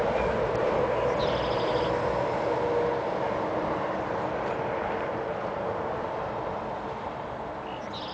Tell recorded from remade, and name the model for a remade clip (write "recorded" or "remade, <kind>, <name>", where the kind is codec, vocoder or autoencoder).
recorded